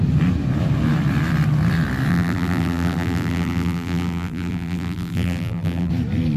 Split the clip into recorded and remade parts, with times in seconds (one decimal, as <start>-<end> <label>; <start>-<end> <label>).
0.0-2.1 recorded; 2.1-5.9 remade; 5.9-6.4 recorded

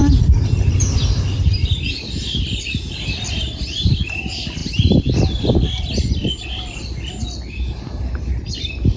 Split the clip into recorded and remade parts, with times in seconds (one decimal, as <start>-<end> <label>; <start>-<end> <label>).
0.0-0.9 recorded; 0.9-1.6 remade; 1.6-2.6 recorded; 2.6-9.0 remade

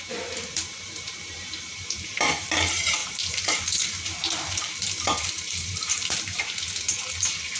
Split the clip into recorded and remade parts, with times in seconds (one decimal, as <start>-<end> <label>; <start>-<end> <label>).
0.0-7.6 remade